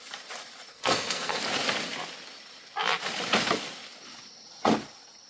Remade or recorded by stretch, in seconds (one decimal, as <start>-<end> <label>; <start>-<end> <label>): 0.0-0.7 recorded; 0.7-1.4 remade; 1.4-5.3 recorded